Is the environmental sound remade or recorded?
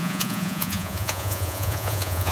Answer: remade